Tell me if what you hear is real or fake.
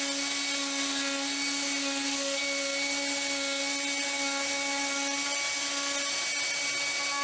real